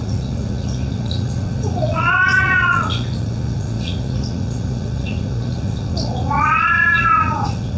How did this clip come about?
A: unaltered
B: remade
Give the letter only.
B